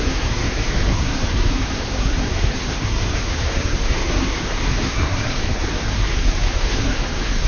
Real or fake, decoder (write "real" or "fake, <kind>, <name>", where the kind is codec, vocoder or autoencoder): fake, codec, SNAC